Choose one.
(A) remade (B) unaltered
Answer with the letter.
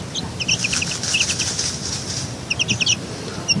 B